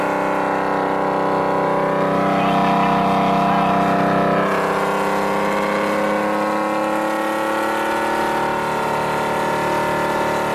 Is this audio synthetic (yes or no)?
no